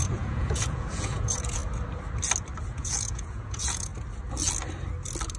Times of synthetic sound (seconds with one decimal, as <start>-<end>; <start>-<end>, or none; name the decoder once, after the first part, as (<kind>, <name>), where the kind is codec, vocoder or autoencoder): 0.0-1.6 (vocoder, Vocos); 2.7-3.9